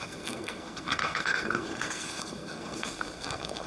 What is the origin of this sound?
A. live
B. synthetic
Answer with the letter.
B